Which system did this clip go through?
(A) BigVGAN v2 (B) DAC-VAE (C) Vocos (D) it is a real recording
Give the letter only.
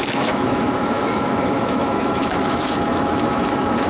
B